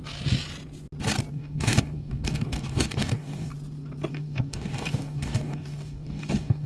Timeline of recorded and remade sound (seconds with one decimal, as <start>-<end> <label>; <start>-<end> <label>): 0.0-1.3 recorded; 1.3-3.5 remade; 3.5-4.1 recorded; 4.1-6.7 remade